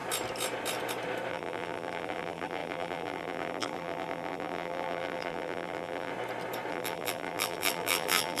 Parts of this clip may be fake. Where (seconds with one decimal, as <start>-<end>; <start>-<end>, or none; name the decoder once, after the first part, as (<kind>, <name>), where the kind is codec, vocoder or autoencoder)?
1.3-6.1 (vocoder, BigVGAN v2); 6.7-8.4